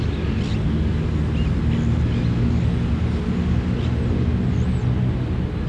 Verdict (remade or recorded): recorded